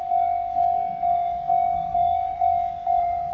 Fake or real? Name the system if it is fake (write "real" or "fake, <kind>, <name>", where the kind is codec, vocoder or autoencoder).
fake, codec, SNAC